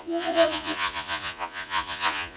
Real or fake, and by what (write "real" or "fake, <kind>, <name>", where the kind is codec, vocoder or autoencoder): fake, vocoder, Vocos